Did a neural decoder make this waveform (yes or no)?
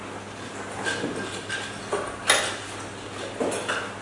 no